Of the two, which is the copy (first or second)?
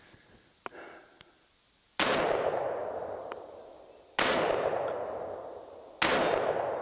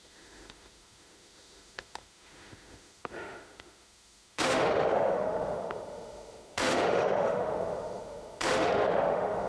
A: second